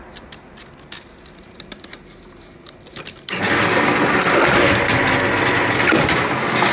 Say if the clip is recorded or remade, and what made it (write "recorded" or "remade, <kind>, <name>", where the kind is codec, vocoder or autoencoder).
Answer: recorded